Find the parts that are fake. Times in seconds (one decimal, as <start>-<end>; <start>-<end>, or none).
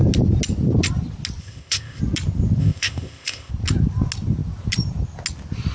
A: 1.4-2.0; 2.6-3.5